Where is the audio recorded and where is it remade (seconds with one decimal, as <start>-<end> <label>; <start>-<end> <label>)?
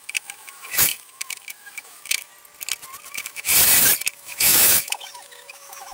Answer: 0.0-2.3 remade; 2.3-3.1 recorded; 3.1-3.5 remade; 3.5-4.1 recorded; 4.1-5.9 remade